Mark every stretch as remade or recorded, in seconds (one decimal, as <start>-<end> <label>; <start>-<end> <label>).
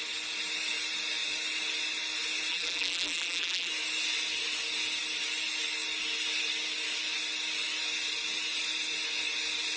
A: 0.0-2.5 recorded; 2.5-3.7 remade; 3.7-9.8 recorded